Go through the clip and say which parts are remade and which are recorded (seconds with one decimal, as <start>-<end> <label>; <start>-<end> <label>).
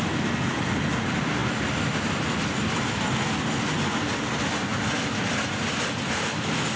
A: 0.0-6.8 recorded